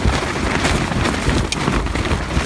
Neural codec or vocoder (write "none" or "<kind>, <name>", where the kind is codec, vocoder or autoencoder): none